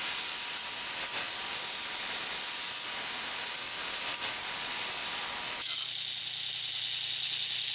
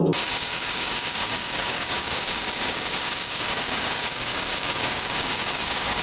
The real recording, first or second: first